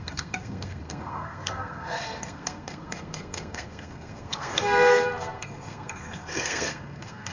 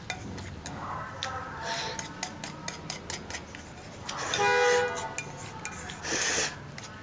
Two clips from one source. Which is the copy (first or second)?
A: first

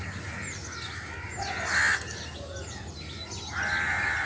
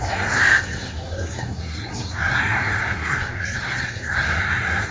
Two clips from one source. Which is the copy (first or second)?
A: second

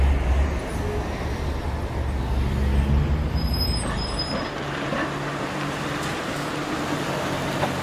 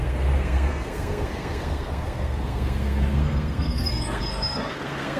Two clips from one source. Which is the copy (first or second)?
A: second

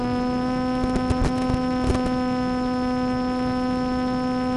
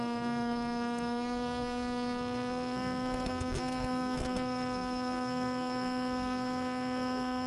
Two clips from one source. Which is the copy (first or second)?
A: second